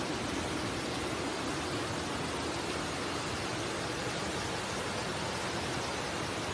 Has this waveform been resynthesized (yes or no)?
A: no